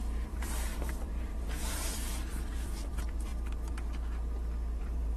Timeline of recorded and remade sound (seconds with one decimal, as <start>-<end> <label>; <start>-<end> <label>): 0.0-3.3 remade; 3.3-4.8 recorded; 4.8-5.2 remade